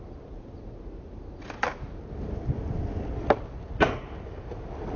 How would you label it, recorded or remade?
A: recorded